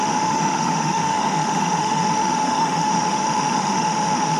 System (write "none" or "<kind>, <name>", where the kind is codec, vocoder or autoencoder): autoencoder, DAC-VAE